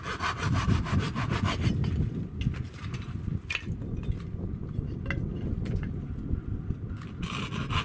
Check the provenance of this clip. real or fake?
real